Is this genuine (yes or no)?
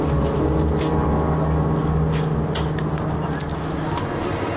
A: yes